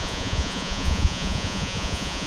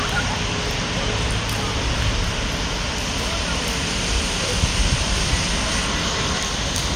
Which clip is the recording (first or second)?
second